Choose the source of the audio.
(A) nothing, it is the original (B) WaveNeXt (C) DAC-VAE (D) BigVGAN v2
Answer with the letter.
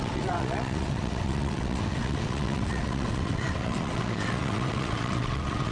B